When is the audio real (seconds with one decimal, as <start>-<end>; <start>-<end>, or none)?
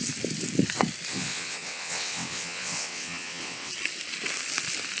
0.0-1.1; 3.7-5.0